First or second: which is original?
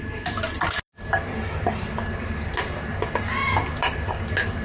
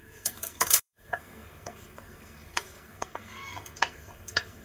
first